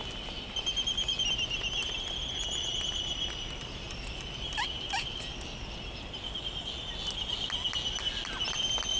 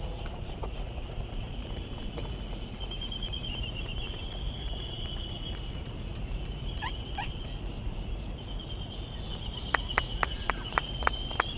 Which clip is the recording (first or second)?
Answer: first